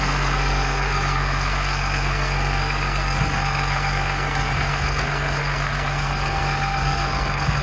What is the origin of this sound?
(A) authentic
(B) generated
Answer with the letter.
B